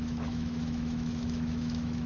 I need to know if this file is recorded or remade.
remade